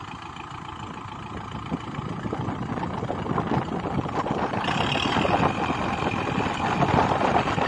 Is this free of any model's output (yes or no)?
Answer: yes